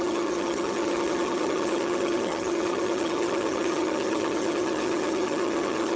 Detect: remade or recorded remade